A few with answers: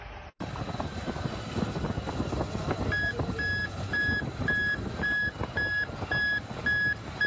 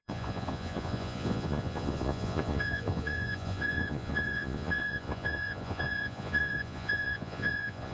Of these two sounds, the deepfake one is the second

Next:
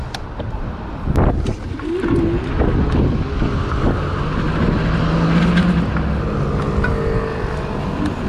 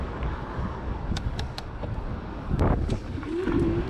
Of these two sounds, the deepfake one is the second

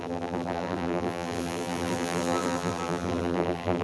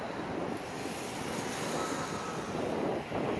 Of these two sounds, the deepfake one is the first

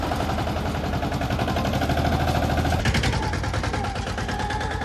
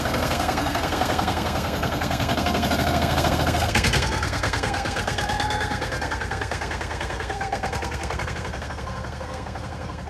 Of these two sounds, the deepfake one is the second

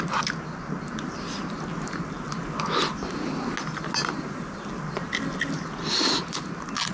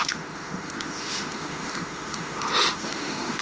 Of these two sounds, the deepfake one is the second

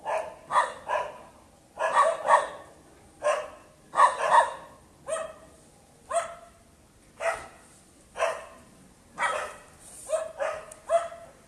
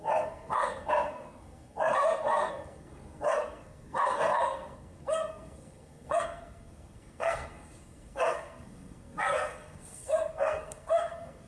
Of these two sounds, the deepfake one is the second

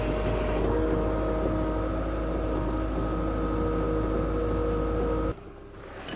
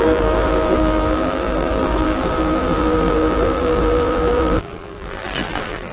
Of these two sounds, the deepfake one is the second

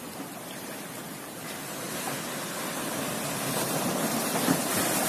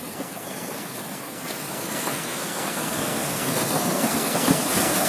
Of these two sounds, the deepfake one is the second